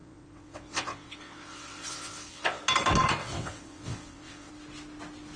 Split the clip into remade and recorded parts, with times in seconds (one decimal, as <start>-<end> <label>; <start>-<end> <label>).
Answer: 0.0-2.6 remade; 2.6-3.2 recorded; 3.2-4.5 remade; 4.5-5.4 recorded